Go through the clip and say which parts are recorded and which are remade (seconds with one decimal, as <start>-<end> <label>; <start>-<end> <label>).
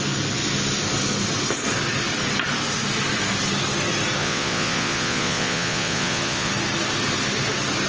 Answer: 0.0-4.2 recorded; 4.2-6.5 remade; 6.5-7.9 recorded